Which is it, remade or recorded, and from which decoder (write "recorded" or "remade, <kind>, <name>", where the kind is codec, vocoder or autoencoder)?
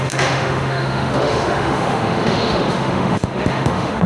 remade, autoencoder, DAC-VAE